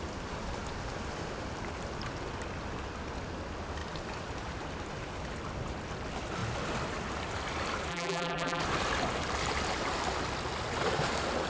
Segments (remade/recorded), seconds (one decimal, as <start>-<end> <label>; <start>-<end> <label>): 0.0-7.9 recorded; 7.9-8.6 remade; 8.6-11.5 recorded